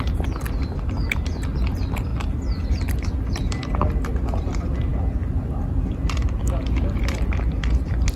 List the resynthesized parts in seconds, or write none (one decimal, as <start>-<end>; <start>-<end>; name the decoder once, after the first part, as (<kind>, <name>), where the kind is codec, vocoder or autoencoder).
2.1-3.3 (vocoder, BigVGAN v2)